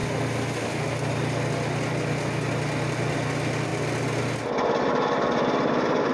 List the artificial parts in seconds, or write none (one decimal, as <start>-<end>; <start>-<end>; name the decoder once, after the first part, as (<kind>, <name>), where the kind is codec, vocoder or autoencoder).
none